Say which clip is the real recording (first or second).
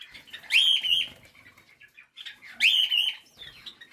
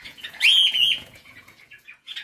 first